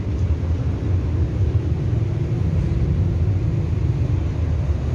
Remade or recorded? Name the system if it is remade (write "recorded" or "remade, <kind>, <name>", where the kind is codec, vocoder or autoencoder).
recorded